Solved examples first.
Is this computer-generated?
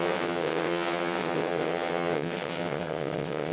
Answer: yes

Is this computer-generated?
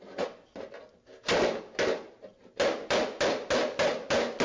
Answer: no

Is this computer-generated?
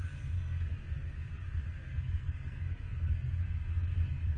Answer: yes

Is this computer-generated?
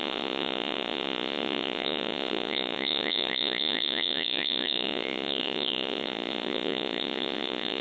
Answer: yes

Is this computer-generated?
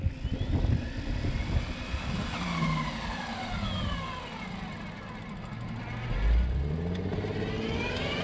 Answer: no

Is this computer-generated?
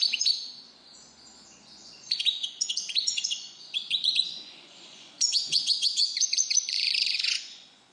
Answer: yes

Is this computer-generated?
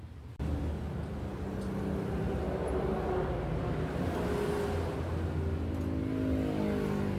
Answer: no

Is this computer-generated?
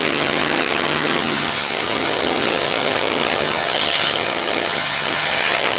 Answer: yes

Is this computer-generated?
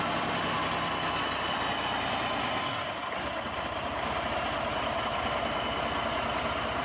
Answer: no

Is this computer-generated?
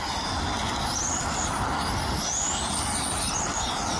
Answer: no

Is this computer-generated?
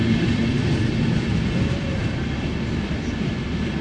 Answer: no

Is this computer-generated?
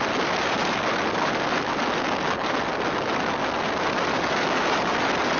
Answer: no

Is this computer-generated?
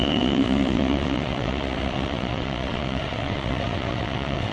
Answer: yes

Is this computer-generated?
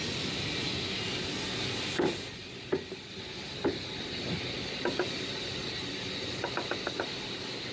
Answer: no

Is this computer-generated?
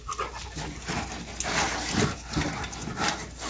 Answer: no